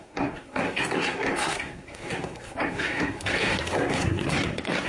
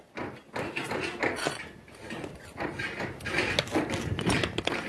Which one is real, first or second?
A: second